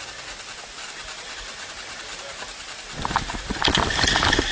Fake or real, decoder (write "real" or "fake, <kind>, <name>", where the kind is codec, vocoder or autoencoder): real